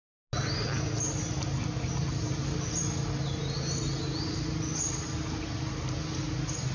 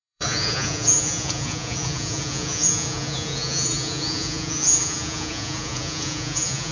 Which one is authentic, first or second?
first